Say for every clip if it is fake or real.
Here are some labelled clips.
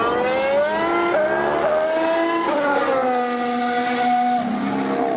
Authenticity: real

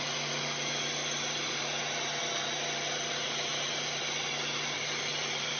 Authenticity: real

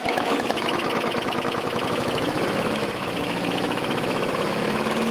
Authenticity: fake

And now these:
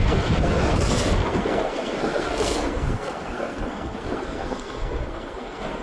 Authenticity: fake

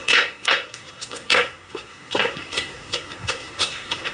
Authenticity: fake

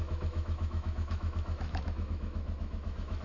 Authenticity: fake